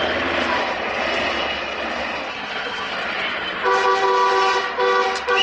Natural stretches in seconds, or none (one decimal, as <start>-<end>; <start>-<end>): 0.0-2.3; 2.9-5.4